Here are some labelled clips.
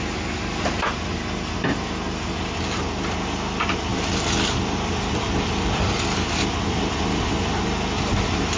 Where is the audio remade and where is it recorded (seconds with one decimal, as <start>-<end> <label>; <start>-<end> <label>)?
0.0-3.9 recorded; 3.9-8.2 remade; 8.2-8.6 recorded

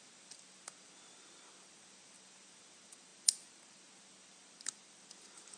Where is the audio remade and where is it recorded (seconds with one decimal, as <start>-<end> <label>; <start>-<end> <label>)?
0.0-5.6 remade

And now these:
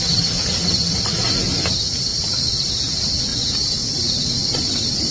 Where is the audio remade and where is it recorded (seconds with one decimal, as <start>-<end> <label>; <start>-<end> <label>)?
0.0-5.1 recorded

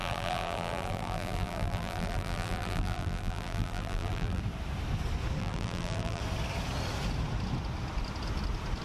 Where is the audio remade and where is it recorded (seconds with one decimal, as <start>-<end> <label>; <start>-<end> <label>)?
0.0-4.4 remade; 4.4-5.4 recorded; 5.4-6.2 remade; 6.2-8.8 recorded